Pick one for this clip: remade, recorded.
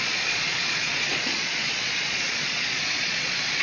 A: remade